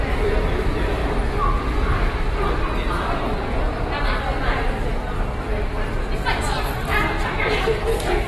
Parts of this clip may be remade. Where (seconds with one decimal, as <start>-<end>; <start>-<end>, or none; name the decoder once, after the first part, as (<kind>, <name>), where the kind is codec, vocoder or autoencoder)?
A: none